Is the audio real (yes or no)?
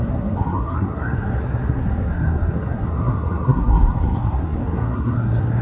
no